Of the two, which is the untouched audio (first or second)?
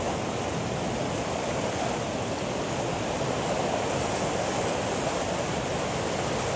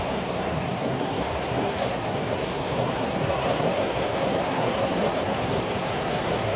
first